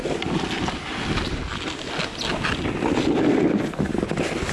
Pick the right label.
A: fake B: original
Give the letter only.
B